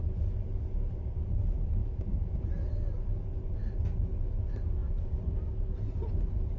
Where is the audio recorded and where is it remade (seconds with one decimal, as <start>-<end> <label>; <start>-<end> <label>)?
0.0-1.8 recorded; 1.8-2.3 remade; 2.3-6.6 recorded